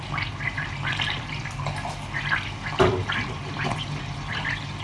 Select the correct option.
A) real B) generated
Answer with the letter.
A